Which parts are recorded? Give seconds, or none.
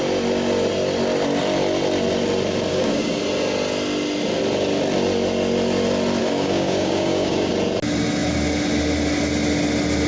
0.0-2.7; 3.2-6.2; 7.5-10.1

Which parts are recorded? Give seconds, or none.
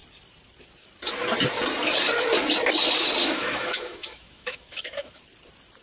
0.0-3.2; 5.2-5.8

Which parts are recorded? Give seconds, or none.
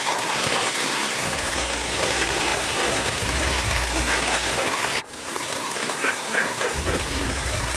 none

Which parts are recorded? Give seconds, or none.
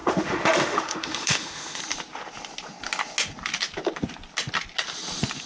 1.8-5.5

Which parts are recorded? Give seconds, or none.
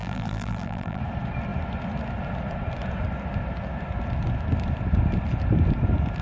1.0-6.2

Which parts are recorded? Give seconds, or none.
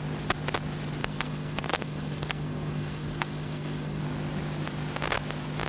0.0-1.0; 4.0-5.7